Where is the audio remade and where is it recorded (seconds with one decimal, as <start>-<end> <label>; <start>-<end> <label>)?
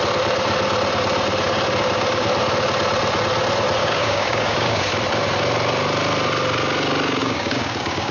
0.0-3.8 recorded; 3.8-4.9 remade; 4.9-7.2 recorded; 7.2-8.1 remade